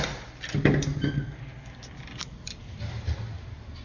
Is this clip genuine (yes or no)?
yes